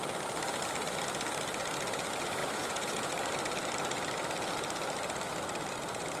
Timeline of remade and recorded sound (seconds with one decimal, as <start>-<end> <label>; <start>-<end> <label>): 0.0-2.4 recorded; 2.4-3.1 remade; 3.1-6.2 recorded

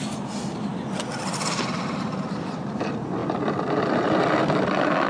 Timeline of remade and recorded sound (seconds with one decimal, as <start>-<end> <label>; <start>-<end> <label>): 0.0-0.7 recorded; 0.7-2.2 remade; 2.2-5.1 recorded